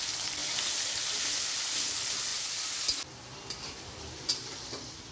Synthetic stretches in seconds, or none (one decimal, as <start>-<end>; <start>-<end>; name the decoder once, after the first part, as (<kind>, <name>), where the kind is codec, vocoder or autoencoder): none